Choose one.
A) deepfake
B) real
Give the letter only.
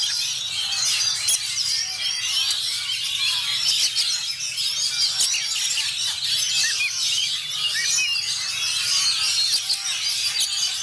B